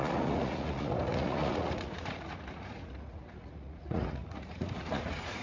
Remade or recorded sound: remade